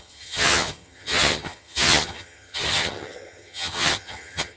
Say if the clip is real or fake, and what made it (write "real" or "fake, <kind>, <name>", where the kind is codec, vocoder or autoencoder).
fake, vocoder, HiFi-GAN